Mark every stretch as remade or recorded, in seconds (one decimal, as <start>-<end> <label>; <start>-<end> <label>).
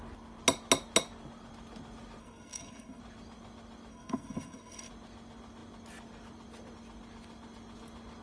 0.0-2.2 recorded; 2.2-3.0 remade; 3.0-3.9 recorded; 3.9-4.9 remade; 4.9-8.2 recorded